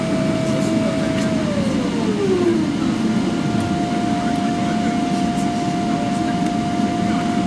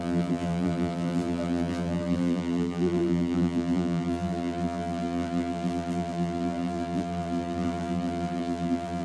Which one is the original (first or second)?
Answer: first